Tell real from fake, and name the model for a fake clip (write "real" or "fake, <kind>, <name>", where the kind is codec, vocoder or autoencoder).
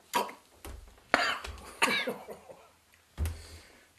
real